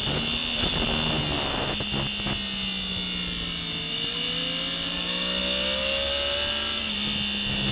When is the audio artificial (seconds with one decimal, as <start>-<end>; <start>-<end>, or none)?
none